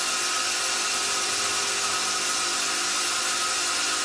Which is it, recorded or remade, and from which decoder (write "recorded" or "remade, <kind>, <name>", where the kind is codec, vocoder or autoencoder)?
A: recorded